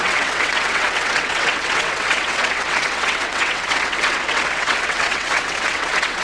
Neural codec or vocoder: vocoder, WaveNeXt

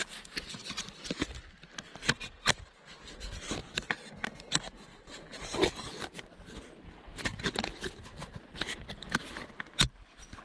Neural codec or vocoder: none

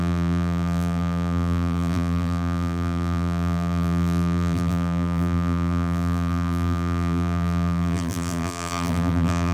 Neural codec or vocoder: vocoder, BigVGAN v2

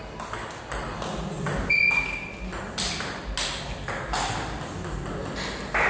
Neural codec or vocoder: none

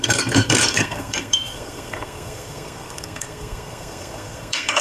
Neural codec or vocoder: codec, SNAC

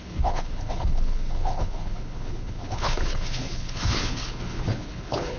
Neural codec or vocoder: codec, HILCodec